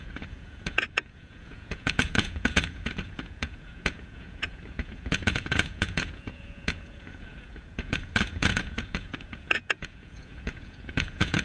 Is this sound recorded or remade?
remade